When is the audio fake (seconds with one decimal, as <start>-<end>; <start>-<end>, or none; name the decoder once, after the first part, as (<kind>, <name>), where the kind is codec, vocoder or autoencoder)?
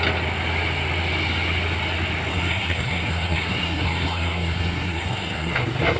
2.3-6.0 (codec, SNAC)